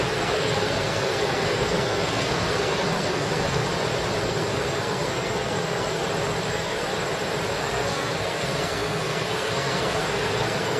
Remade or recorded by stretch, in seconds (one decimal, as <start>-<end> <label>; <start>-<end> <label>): 0.0-3.6 remade; 3.6-4.2 recorded; 4.2-6.0 remade; 6.0-6.5 recorded; 6.5-6.9 remade; 6.9-7.5 recorded; 7.5-10.8 remade